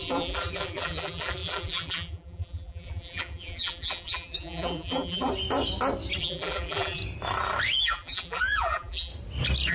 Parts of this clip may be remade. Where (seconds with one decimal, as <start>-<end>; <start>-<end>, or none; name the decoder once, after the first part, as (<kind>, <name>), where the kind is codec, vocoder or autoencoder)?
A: 0.0-5.3 (vocoder, BigVGAN v2); 6.2-7.0; 7.8-9.1